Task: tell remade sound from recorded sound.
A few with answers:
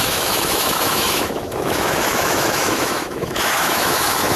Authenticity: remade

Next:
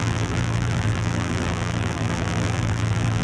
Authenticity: remade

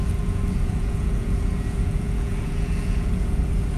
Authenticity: remade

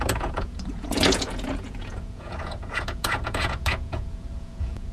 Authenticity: remade